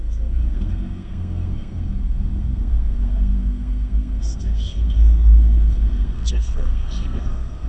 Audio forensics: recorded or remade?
remade